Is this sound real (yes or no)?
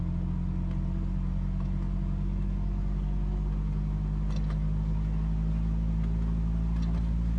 yes